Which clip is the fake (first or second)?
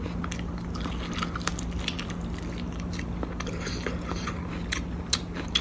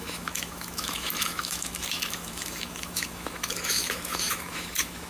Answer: second